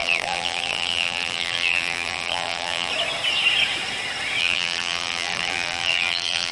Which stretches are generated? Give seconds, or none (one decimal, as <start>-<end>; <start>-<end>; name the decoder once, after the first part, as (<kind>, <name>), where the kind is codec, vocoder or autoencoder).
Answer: 0.0-2.9 (vocoder, BigVGAN v2); 4.4-6.5